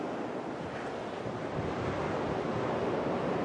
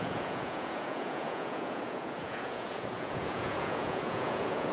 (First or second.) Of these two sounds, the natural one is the first